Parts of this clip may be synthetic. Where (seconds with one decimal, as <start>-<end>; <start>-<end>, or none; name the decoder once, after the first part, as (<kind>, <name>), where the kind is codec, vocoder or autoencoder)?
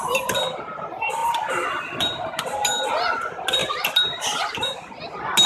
3.6-4.9 (vocoder, BigVGAN v2)